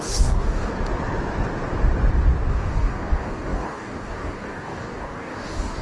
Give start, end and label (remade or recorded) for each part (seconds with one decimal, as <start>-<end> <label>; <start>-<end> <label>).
0.0-0.7 remade; 0.7-2.5 recorded; 2.5-5.8 remade